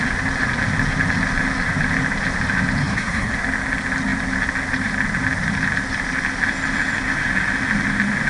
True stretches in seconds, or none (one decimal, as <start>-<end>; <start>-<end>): 0.0-2.8; 3.3-8.3